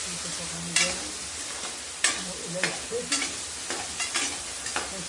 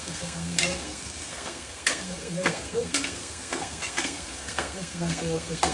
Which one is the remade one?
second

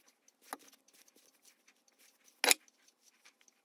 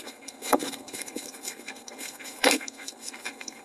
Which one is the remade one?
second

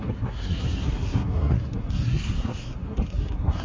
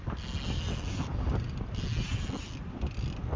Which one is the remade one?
first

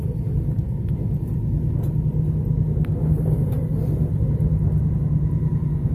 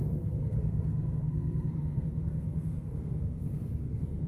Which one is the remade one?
second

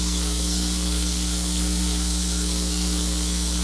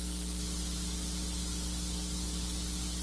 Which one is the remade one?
first